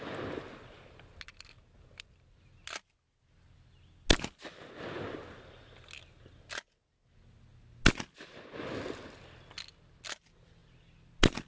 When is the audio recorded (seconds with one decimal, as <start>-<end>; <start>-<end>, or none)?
0.0-11.5